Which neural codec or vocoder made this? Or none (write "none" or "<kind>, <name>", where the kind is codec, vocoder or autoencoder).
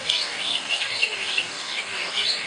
codec, DAC